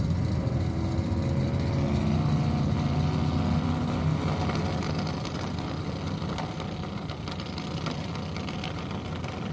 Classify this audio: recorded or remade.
recorded